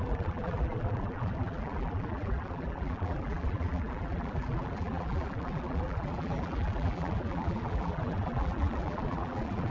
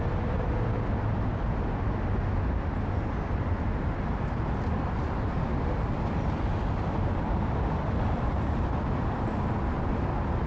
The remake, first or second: first